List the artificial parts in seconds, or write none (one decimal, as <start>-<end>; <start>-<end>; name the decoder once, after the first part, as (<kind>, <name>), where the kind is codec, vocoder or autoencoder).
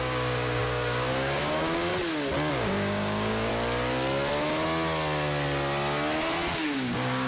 0.0-1.9 (codec, DAC); 2.5-3.5; 6.5-7.3